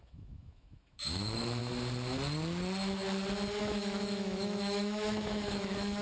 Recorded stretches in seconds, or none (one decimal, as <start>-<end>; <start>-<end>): 1.6-3.6